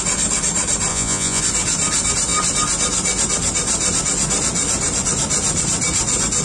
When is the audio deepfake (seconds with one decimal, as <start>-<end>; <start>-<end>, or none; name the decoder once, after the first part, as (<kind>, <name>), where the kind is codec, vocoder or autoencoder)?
0.9-1.4 (vocoder, Vocos)